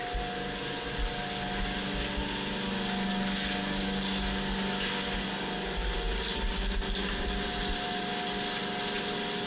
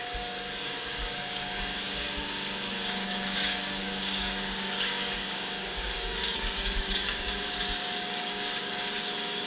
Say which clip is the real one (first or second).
first